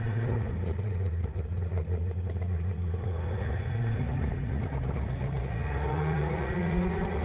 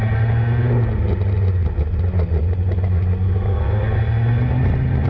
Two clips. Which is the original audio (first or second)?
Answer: second